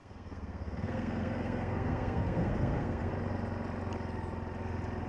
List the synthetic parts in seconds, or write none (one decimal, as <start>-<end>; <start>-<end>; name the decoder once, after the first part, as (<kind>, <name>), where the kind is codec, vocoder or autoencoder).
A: 0.0-3.1 (codec, SNAC)